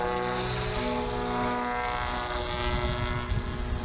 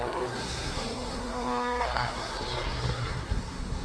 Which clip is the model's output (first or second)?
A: second